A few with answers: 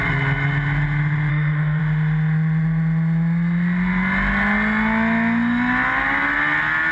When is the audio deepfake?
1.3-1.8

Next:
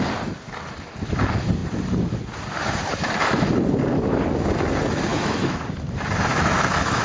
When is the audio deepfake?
5.1-5.6; 6.3-7.0

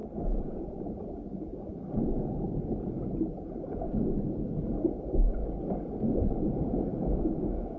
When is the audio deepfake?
6.9-7.8

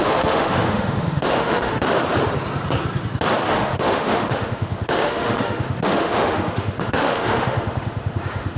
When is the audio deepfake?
0.0-1.8; 3.5-8.6